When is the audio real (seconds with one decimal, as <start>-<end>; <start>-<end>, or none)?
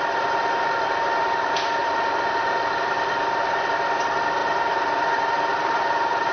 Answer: none